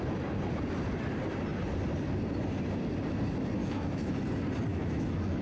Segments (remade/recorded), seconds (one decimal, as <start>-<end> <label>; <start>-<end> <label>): 0.0-3.6 recorded; 3.6-4.2 remade; 4.2-4.7 recorded; 4.7-5.4 remade